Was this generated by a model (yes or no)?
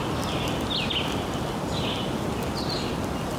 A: no